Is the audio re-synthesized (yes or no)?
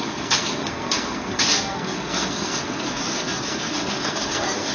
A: yes